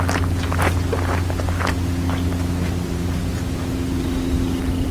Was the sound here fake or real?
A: real